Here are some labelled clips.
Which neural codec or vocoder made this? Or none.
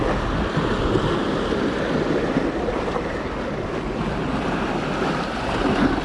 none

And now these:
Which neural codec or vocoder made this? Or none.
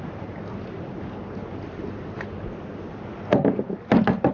none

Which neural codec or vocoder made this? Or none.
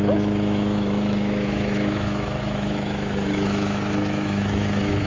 autoencoder, DAC-VAE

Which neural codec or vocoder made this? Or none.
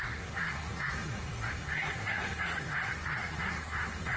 codec, SNAC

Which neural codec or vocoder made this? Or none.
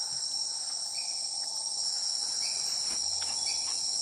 none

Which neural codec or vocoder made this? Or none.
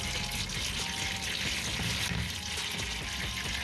none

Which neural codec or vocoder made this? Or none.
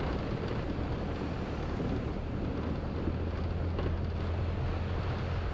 none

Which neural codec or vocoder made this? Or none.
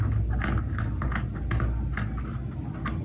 none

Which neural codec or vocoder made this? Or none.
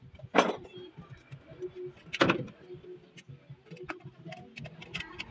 none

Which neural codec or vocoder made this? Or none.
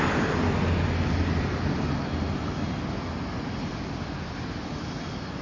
none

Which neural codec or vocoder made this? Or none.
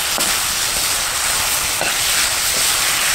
none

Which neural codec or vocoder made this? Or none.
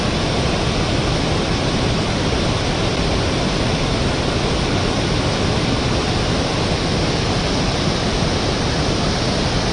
none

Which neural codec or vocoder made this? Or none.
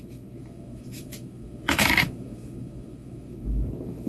autoencoder, DAC-VAE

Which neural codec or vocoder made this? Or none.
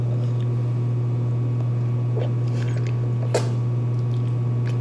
none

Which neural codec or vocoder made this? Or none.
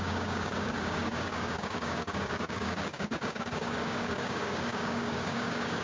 codec, DAC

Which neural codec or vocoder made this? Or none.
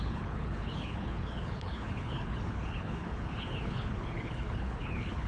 codec, HILCodec